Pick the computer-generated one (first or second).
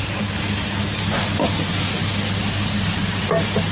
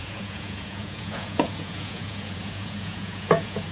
second